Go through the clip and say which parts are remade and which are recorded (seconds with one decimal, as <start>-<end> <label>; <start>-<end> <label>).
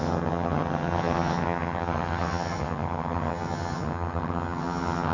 0.0-5.1 remade